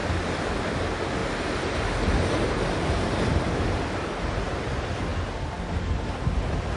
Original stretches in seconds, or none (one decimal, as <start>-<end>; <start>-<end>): 0.0-6.8